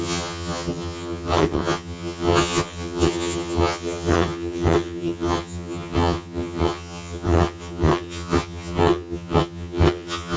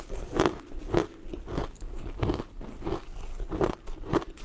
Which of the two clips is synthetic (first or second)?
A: first